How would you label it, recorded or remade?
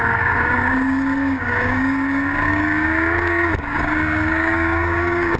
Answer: remade